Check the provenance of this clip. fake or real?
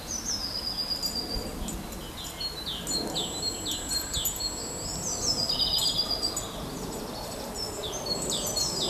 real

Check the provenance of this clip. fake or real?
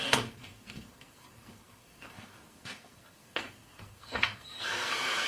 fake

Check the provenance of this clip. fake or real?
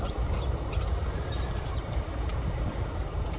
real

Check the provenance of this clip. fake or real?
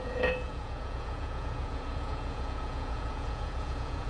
fake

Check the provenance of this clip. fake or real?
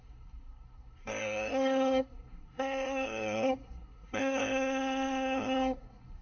fake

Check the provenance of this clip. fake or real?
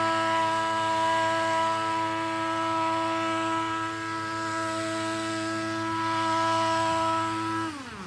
real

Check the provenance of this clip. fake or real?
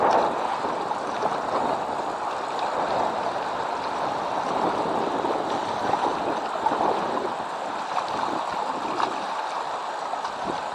real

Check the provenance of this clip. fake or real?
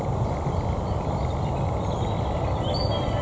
real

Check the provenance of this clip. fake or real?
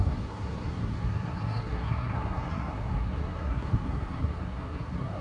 fake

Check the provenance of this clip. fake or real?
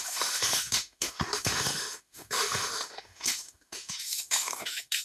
fake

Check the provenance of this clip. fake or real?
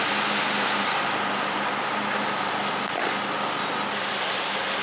real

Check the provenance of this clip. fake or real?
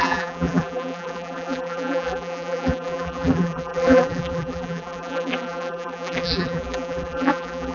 fake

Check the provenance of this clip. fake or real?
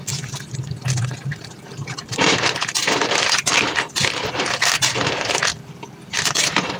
real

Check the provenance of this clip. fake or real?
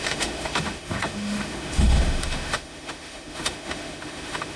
fake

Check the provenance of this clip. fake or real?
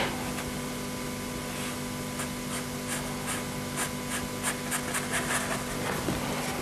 real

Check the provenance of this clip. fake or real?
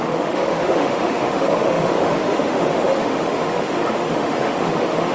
fake